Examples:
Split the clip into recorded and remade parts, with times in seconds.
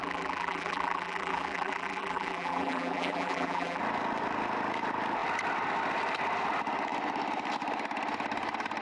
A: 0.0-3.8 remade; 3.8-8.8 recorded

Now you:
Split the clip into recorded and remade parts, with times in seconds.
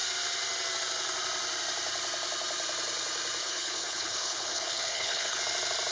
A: 0.0-3.4 recorded; 3.4-5.4 remade; 5.4-5.9 recorded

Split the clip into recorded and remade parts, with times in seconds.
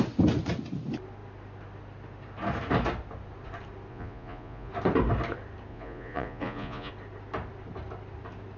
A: 0.0-3.9 recorded; 3.9-4.7 remade; 4.7-5.7 recorded; 5.7-6.9 remade; 6.9-8.6 recorded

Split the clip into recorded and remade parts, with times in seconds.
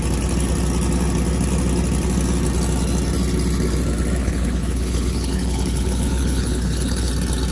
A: 0.0-4.2 recorded; 4.2-7.1 remade; 7.1-7.5 recorded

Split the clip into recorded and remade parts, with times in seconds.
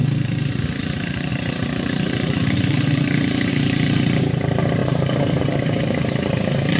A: 0.0-0.8 recorded; 0.8-6.8 remade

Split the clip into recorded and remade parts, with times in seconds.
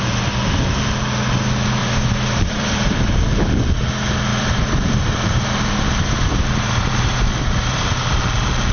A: 0.0-1.8 recorded; 1.8-3.2 remade; 3.2-4.3 recorded; 4.3-8.2 remade; 8.2-8.7 recorded